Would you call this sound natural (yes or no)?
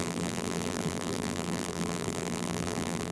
no